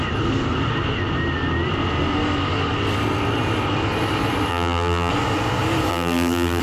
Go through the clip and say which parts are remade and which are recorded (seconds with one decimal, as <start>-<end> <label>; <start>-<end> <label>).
0.0-4.5 recorded; 4.5-5.1 remade; 5.1-5.9 recorded; 5.9-6.6 remade